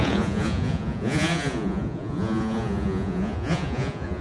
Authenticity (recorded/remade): remade